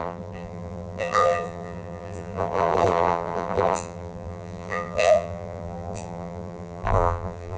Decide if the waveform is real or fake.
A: fake